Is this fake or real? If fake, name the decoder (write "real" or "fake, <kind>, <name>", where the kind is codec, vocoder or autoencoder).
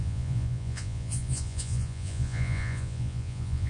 fake, vocoder, Vocos